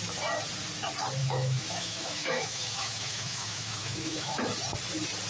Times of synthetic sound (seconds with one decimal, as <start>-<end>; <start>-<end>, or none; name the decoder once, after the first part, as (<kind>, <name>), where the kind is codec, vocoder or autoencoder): 1.2-4.4 (autoencoder, DAC-VAE)